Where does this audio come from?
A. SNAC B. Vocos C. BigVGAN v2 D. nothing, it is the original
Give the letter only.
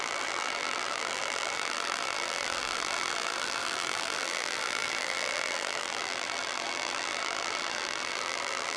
C